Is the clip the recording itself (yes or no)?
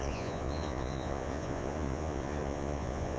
no